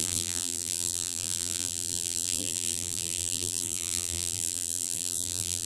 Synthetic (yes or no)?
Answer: yes